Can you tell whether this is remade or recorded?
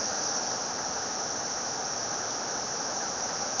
recorded